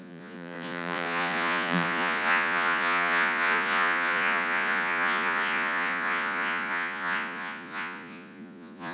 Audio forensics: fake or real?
fake